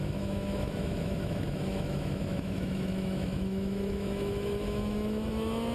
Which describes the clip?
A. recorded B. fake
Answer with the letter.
B